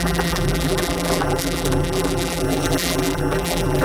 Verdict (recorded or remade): remade